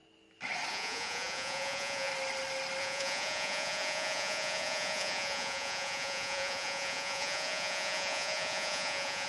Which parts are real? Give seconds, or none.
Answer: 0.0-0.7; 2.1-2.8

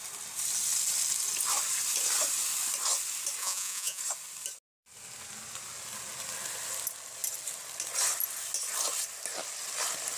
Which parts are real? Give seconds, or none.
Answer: 0.0-3.4; 4.0-10.2

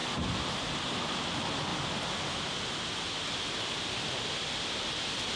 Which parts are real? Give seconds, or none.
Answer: 0.0-5.4

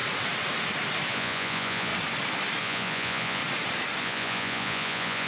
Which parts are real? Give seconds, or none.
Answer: 0.0-1.1; 1.9-2.6; 3.4-4.0

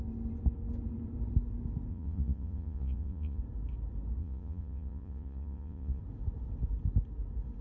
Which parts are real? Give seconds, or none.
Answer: 0.0-1.9; 3.4-4.2; 6.0-7.6

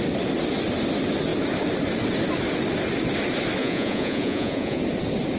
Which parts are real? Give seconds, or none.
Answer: 0.0-3.6; 4.8-5.4

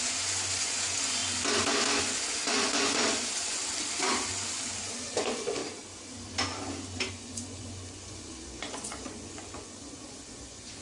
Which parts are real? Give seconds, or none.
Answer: 1.2-2.0; 3.6-4.5; 5.6-7.1